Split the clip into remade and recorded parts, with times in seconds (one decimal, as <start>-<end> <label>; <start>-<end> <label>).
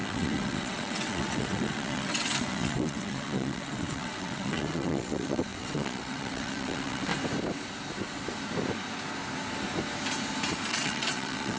0.0-7.1 remade; 7.1-10.7 recorded; 10.7-11.6 remade